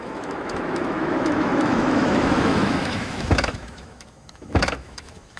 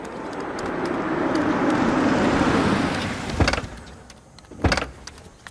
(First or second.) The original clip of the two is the second